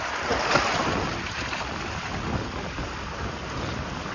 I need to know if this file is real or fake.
real